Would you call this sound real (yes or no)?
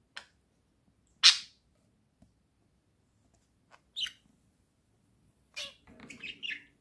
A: yes